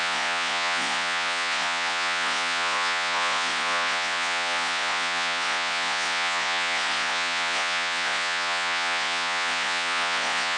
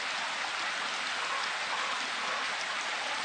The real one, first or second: second